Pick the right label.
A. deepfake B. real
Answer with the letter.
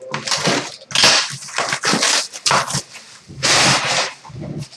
B